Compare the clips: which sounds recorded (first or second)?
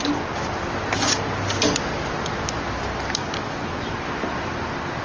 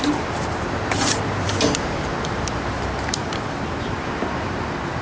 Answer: first